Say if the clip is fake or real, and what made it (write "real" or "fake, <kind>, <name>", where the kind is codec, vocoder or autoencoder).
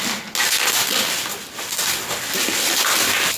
real